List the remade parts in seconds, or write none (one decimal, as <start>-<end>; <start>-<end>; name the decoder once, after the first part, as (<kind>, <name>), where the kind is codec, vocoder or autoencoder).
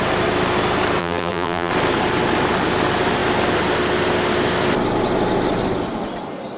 1.0-1.7 (vocoder, BigVGAN v2)